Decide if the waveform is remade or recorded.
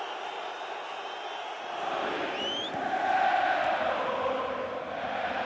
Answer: recorded